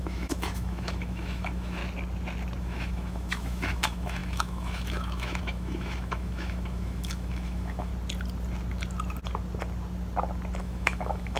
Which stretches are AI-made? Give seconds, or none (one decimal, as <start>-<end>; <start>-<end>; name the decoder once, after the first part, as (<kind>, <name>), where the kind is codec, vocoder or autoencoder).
0.0-1.8 (autoencoder, DAC-VAE); 2.6-7.9; 10.6-11.4